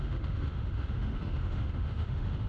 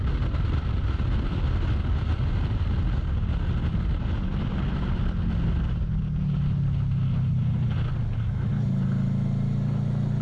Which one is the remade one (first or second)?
first